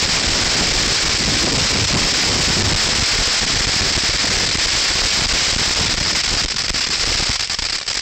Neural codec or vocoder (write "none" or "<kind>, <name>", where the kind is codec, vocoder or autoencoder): none